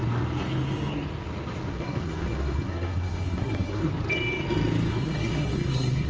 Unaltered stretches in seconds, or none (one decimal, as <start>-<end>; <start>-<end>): 0.0-1.7; 3.9-4.9